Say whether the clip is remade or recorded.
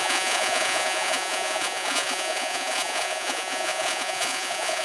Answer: remade